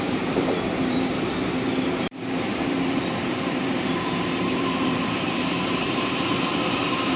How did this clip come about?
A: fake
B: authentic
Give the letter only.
A